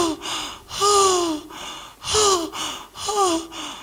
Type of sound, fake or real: real